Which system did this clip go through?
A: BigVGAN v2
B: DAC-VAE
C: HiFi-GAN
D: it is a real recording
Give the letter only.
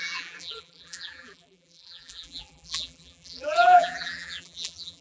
A